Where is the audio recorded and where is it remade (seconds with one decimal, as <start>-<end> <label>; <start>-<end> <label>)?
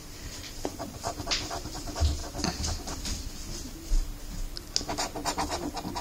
0.0-2.2 remade; 2.2-6.0 recorded